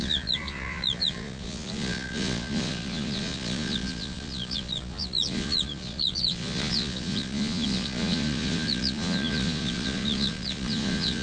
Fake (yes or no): yes